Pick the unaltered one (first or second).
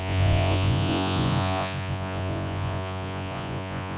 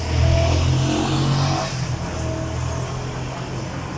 second